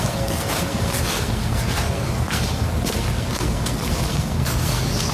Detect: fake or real fake